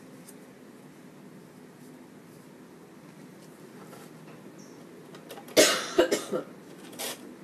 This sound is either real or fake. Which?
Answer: real